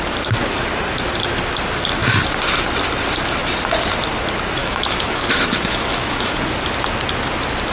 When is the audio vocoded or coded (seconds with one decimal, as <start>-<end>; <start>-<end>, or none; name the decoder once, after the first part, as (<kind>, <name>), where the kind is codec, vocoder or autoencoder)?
4.6-6.3 (autoencoder, DAC-VAE)